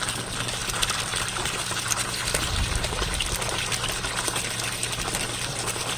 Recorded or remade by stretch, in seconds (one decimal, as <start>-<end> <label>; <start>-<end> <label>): 0.0-6.0 recorded